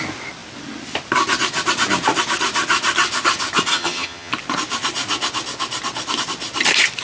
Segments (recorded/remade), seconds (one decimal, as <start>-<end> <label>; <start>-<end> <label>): 0.0-3.7 recorded; 3.7-4.3 remade; 4.3-7.0 recorded